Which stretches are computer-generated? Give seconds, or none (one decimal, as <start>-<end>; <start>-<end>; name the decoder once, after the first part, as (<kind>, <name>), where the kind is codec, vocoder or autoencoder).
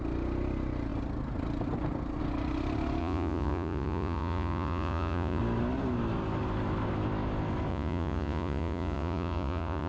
3.0-5.4 (vocoder, Vocos); 7.7-9.9